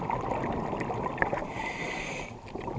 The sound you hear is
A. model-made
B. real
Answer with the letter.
B